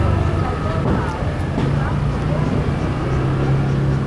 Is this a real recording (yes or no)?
yes